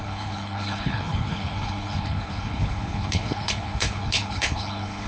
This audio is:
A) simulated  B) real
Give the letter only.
A